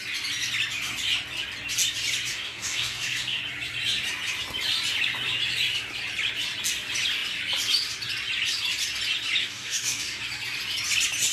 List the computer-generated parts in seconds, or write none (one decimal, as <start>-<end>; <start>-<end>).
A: 2.3-3.4; 9.4-10.2

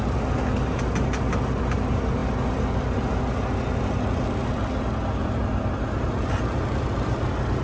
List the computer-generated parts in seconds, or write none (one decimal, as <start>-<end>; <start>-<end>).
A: none

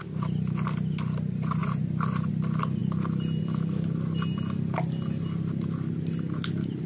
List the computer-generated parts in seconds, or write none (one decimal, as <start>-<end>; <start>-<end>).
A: 1.6-2.3; 2.8-3.4

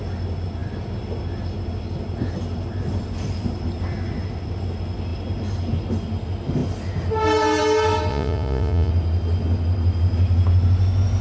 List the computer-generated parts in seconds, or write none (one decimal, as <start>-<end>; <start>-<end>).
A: 8.1-8.9

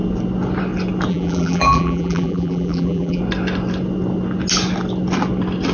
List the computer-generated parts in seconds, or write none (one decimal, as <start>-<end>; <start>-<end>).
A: 1.1-3.2

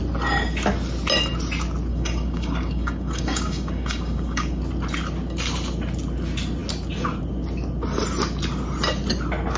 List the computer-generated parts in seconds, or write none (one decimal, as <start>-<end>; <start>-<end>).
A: 1.9-4.6

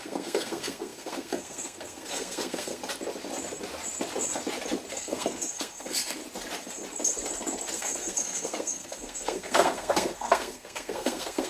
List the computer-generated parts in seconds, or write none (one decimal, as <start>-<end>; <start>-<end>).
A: 0.0-2.8; 4.9-6.2; 7.7-11.5